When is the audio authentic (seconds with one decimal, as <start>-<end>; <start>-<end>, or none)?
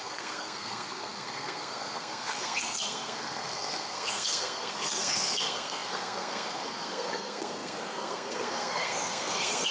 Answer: none